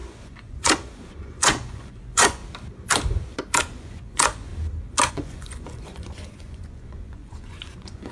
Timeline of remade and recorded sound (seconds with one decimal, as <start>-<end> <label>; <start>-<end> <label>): 0.0-2.4 remade; 2.4-3.6 recorded; 3.6-4.5 remade; 4.5-5.1 recorded; 5.1-8.1 remade